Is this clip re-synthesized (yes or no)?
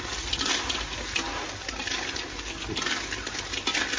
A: no